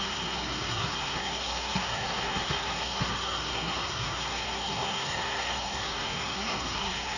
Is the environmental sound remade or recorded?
remade